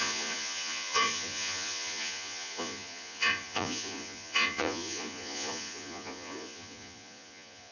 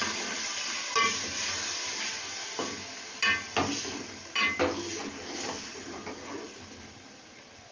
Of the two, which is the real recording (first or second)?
second